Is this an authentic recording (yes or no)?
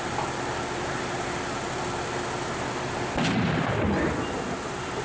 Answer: yes